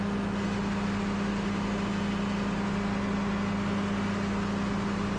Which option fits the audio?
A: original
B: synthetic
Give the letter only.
A